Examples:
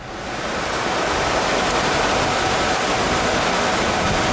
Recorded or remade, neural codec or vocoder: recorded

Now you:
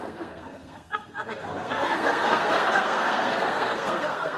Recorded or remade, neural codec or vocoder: remade, codec, SNAC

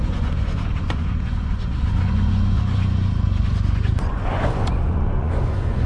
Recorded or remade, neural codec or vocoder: remade, vocoder, Vocos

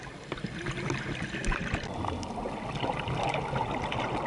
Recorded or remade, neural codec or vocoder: recorded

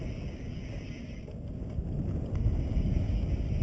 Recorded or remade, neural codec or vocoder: recorded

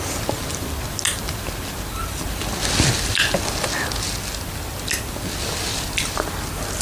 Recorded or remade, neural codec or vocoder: recorded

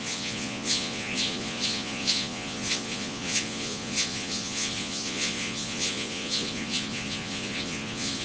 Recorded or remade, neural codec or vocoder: remade, vocoder, Vocos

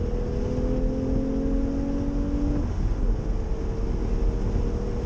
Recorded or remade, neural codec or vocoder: recorded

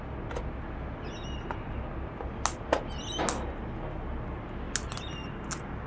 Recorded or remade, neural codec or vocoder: recorded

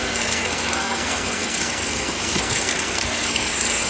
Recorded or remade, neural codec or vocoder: remade, codec, SNAC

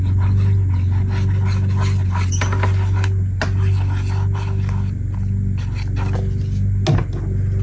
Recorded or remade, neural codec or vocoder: recorded